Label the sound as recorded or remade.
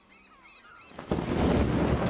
recorded